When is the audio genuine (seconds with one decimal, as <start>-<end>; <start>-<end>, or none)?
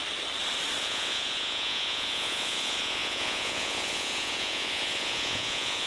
0.0-0.8